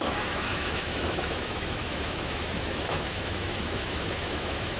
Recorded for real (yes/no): no